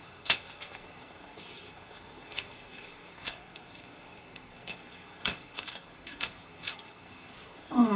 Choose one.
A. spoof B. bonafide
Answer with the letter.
A